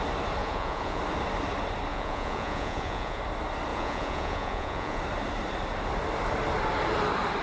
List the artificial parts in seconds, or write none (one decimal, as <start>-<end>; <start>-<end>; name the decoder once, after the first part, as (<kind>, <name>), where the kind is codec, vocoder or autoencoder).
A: 0.4-1.0 (vocoder, Vocos); 1.9-3.2; 3.7-5.0